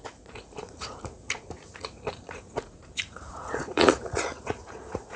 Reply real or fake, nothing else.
fake